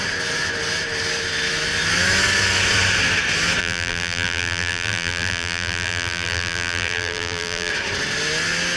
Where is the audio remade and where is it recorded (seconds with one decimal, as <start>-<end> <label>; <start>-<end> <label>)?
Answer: 0.0-3.6 recorded; 3.6-7.7 remade; 7.7-8.8 recorded